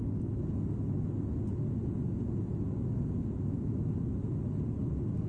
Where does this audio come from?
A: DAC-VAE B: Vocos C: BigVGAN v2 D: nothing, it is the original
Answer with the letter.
D